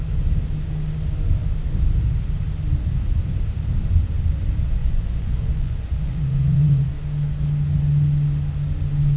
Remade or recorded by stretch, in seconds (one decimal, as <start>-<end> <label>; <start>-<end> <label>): 0.0-4.8 recorded; 4.8-6.9 remade; 6.9-9.2 recorded